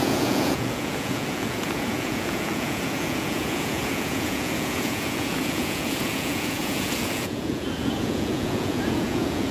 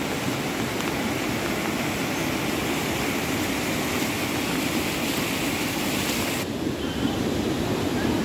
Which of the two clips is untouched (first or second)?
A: second